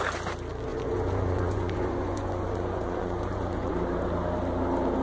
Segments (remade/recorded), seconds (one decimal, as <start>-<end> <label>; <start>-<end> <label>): 0.0-0.7 recorded; 0.7-3.7 remade; 3.7-5.0 recorded